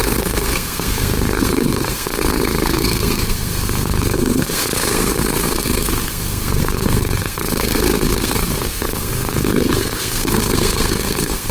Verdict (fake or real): fake